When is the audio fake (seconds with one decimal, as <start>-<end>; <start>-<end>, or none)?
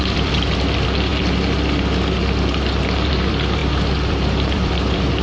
0.0-1.1; 3.1-3.6; 4.1-5.2